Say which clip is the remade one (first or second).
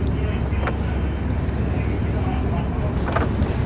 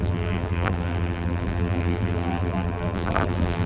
second